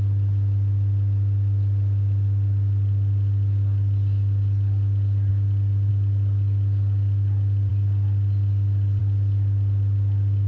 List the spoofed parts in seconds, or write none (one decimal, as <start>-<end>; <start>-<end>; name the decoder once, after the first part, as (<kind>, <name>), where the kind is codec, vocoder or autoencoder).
none